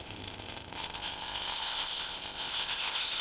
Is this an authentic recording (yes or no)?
no